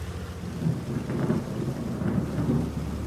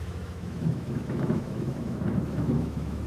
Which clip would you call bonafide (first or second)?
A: first